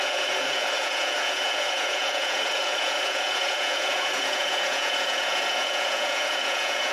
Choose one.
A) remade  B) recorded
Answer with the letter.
A